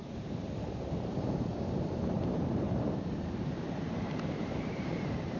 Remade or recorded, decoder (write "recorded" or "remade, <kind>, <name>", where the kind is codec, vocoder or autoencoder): remade, vocoder, BigVGAN v2